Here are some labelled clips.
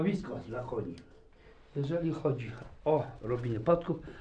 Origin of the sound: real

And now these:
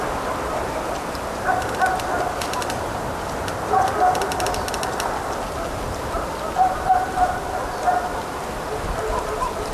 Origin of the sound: real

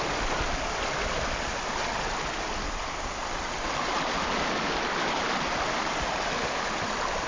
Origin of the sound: real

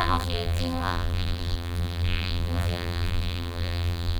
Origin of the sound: fake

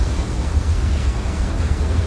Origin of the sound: fake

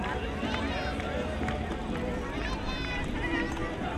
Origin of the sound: real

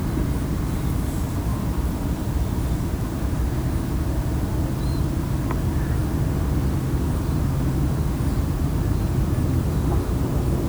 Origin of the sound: real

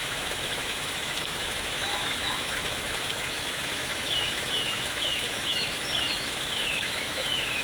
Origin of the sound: fake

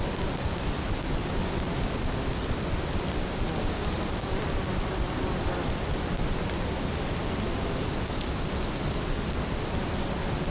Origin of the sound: real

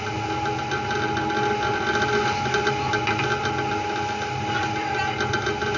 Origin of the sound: real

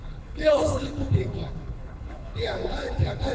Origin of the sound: fake